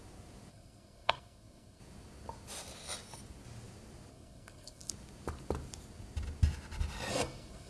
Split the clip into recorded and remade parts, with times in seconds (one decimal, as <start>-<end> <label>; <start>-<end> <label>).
0.0-0.5 recorded; 0.5-1.8 remade; 1.8-4.1 recorded; 4.1-4.9 remade; 4.9-7.1 recorded; 7.1-7.7 remade

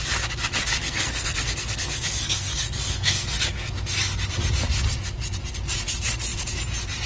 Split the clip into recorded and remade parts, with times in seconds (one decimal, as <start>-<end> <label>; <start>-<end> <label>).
0.0-0.8 recorded; 0.8-3.7 remade; 3.7-7.1 recorded

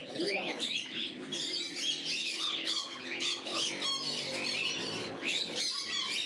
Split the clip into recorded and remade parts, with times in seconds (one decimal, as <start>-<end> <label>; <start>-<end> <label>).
0.0-1.3 remade; 1.3-2.2 recorded; 2.2-3.7 remade; 3.7-5.0 recorded; 5.0-5.6 remade; 5.6-6.3 recorded

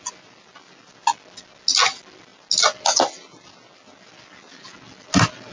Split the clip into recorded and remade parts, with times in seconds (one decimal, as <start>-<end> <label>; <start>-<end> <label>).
0.0-5.5 recorded

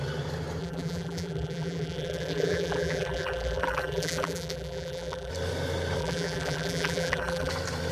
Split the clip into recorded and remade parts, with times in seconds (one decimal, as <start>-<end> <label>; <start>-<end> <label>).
0.0-0.6 recorded; 0.6-5.3 remade; 5.3-6.0 recorded; 6.0-7.5 remade; 7.5-7.9 recorded

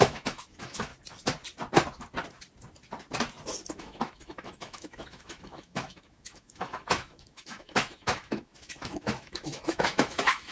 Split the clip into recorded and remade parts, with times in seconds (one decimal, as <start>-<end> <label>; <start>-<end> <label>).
0.0-0.9 remade; 0.9-3.7 recorded; 3.7-10.5 remade

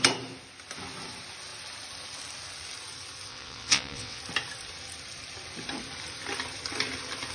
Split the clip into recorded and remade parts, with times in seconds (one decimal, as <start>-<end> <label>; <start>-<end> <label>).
0.0-3.3 recorded; 3.3-4.2 remade; 4.2-7.3 recorded